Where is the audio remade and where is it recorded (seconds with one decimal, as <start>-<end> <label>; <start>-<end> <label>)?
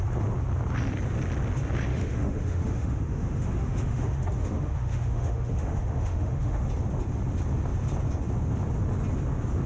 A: 0.0-1.9 recorded; 1.9-6.7 remade; 6.7-9.7 recorded